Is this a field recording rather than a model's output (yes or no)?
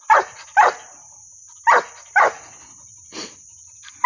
yes